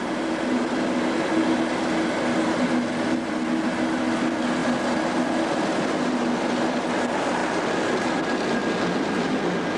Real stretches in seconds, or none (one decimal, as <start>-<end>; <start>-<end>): 0.0-9.8